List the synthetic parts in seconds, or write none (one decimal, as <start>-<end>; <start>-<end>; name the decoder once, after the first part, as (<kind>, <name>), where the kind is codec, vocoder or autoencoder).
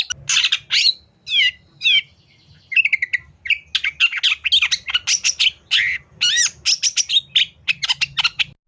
none